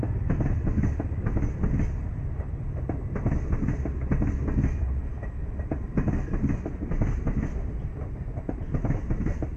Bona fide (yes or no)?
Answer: no